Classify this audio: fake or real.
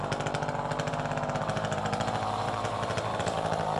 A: fake